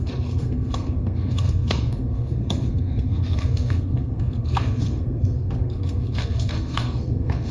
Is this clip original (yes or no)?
no